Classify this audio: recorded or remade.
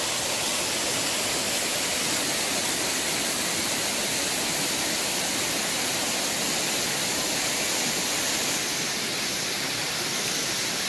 recorded